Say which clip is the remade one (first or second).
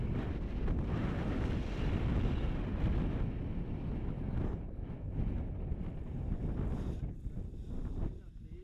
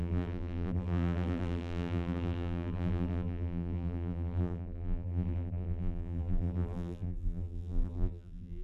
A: second